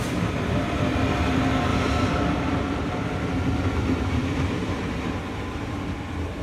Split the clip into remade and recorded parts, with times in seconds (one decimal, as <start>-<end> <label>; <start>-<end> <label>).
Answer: 0.0-1.7 recorded; 1.7-2.8 remade; 2.8-4.2 recorded; 4.2-4.8 remade; 4.8-6.4 recorded